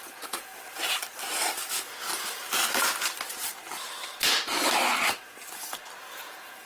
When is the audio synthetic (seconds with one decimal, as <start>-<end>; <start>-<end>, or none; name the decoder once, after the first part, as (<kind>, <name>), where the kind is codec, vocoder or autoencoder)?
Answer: 0.0-0.5 (vocoder, Vocos); 1.7-2.1; 6.1-6.7